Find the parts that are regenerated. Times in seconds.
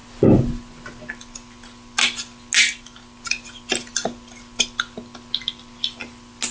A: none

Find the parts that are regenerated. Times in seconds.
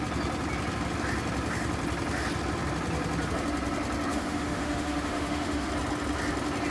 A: 4.1-5.7 (autoencoder, DAC-VAE)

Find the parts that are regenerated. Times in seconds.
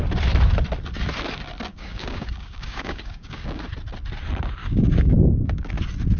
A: 1.7-3.6 (codec, DAC); 4.6-5.7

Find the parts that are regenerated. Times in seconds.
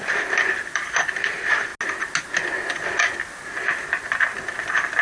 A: none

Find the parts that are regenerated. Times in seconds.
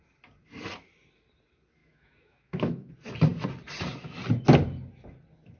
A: 1.8-2.9 (autoencoder, DAC-VAE)